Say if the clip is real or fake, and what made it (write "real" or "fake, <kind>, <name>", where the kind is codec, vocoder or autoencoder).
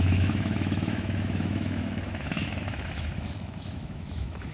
fake, autoencoder, DAC-VAE